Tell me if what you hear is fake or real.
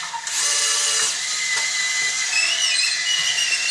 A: real